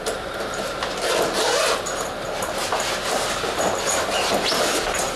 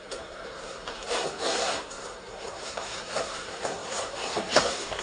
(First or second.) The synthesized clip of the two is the second